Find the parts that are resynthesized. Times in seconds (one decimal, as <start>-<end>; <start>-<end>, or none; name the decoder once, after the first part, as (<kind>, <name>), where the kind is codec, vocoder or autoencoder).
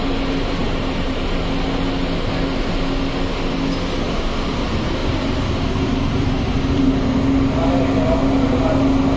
0.6-1.4 (vocoder, BigVGAN v2); 5.0-6.9